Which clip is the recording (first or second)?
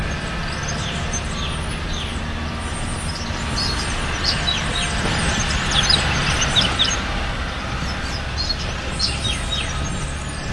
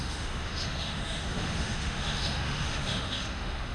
first